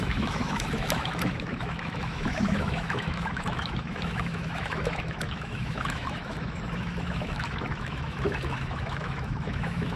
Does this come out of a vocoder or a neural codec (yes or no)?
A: yes